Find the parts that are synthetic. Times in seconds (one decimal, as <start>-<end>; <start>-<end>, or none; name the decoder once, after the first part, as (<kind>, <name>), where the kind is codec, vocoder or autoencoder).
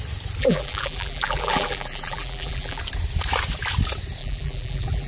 0.4-2.8 (vocoder, BigVGAN v2); 4.2-5.1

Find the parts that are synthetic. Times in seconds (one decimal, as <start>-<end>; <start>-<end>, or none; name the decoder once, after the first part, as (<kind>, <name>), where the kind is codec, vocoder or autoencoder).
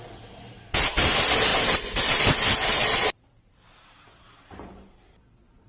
1.5-2.2 (vocoder, BigVGAN v2); 2.8-4.0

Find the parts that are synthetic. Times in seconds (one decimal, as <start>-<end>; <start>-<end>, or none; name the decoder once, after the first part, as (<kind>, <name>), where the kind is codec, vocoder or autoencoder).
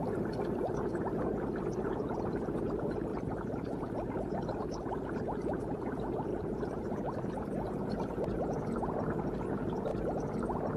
6.3-6.8 (vocoder, BigVGAN v2)